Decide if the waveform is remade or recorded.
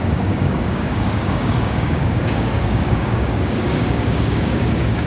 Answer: remade